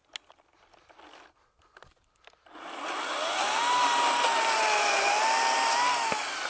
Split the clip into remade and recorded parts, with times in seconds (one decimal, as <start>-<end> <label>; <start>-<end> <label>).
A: 0.0-6.5 recorded